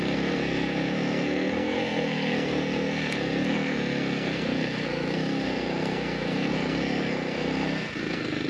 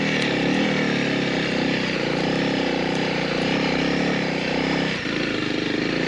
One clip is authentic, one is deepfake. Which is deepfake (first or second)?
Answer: first